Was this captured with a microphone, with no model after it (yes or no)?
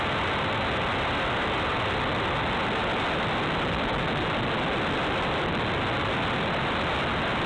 yes